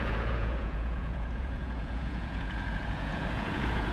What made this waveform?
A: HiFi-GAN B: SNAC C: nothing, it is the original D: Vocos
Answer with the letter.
D